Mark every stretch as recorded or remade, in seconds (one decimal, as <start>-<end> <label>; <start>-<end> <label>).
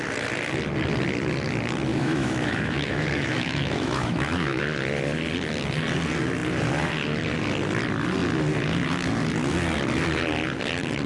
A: 0.0-1.9 recorded; 1.9-4.6 remade; 4.6-11.1 recorded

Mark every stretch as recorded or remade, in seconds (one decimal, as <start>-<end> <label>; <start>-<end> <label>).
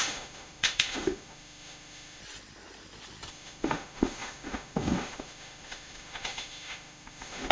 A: 0.0-2.2 remade; 2.2-3.3 recorded; 3.3-7.5 remade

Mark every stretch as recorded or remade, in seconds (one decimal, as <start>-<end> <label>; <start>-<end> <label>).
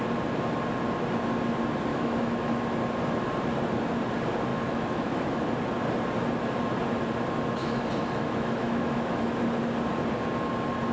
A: 0.0-1.9 recorded; 1.9-2.6 remade; 2.6-4.5 recorded; 4.5-5.4 remade; 5.4-7.6 recorded; 7.6-9.4 remade; 9.4-10.9 recorded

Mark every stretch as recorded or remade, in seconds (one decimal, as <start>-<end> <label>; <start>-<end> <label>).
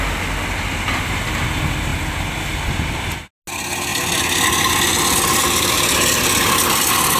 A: 0.0-7.2 recorded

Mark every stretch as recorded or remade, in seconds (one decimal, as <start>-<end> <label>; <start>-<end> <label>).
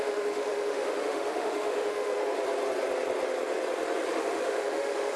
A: 0.0-2.2 remade; 2.2-4.1 recorded; 4.1-5.2 remade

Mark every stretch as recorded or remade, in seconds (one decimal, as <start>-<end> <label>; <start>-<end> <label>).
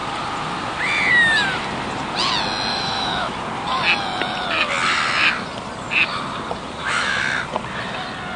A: 0.0-2.7 recorded; 2.7-3.4 remade; 3.4-6.8 recorded; 6.8-7.4 remade; 7.4-8.4 recorded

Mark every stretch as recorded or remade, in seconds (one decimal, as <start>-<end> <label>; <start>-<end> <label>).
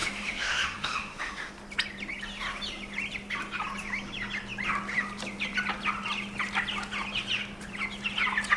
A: 0.0-1.5 remade; 1.5-8.6 recorded